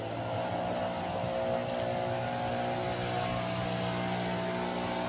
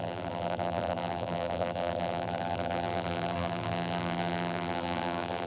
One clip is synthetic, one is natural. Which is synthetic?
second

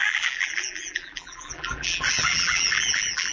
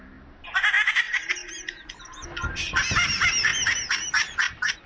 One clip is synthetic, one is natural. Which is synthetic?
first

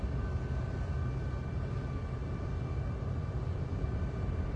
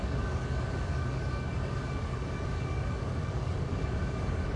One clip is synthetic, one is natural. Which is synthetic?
second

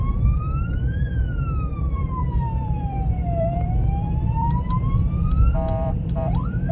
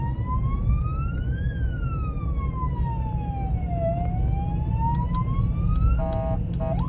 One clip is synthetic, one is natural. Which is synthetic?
first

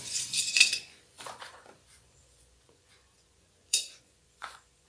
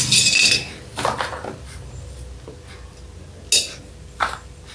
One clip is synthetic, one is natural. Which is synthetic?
first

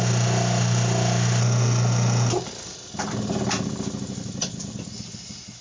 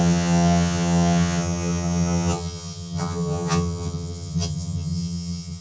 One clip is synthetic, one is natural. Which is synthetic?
second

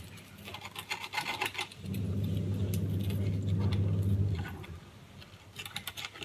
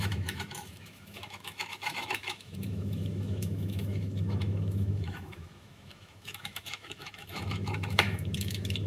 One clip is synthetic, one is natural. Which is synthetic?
second